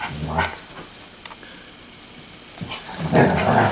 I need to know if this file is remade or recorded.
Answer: recorded